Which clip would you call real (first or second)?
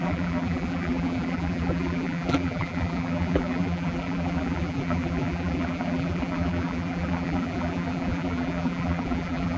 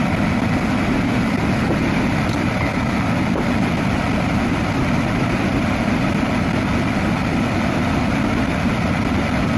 second